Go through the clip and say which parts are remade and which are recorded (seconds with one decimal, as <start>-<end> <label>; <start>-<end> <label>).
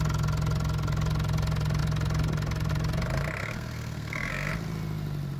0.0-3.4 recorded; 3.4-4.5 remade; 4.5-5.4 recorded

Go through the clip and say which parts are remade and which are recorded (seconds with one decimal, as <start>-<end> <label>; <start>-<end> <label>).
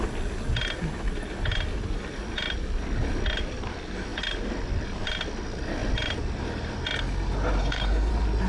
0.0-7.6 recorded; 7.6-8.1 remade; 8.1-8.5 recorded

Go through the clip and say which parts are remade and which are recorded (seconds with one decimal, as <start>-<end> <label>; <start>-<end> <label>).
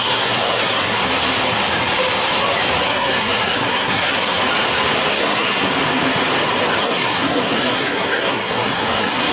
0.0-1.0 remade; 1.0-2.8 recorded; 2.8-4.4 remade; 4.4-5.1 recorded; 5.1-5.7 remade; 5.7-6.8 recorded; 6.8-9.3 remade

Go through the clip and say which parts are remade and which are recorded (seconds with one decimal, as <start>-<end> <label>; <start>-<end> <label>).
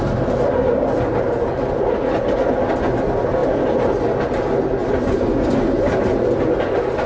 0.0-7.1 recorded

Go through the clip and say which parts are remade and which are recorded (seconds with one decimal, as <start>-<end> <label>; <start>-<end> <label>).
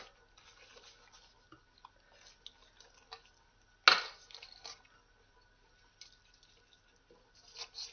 0.0-7.9 recorded